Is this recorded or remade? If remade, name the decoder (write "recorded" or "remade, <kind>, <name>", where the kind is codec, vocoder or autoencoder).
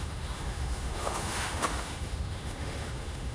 remade, autoencoder, DAC-VAE